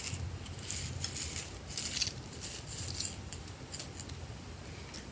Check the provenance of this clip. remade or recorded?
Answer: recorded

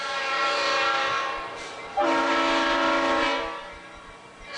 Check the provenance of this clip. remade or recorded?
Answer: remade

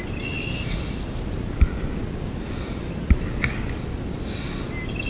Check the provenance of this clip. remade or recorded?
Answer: recorded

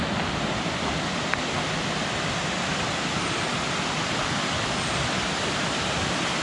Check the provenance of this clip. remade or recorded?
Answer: recorded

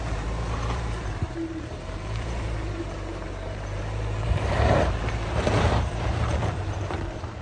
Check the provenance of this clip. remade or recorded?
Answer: remade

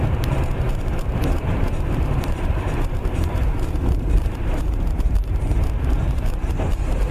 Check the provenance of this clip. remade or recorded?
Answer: remade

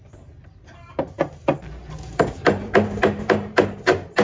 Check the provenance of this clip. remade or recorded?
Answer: remade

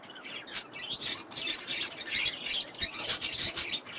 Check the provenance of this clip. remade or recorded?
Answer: remade